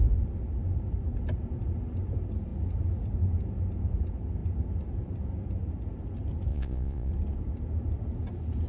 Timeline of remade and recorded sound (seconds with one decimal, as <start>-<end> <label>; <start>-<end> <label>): 0.0-6.5 recorded; 6.5-7.1 remade; 7.1-8.7 recorded